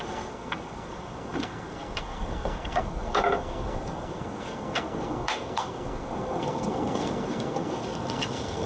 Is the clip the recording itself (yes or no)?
no